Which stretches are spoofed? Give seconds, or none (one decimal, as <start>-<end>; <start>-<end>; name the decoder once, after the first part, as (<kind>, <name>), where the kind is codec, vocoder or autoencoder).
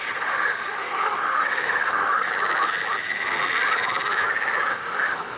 0.0-2.3 (autoencoder, DAC-VAE); 4.7-5.4